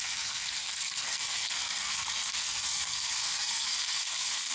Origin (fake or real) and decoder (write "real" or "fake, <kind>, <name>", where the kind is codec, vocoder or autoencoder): fake, codec, SNAC